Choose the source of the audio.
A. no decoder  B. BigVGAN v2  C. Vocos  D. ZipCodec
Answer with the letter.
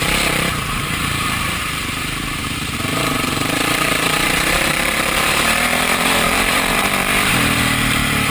B